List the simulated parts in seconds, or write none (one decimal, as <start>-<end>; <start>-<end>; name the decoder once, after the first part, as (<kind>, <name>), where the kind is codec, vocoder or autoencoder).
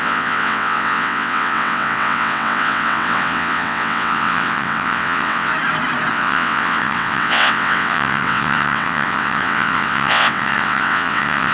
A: 0.0-5.5 (vocoder, WaveNeXt); 6.1-11.5